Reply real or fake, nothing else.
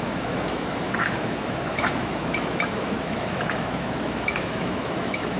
fake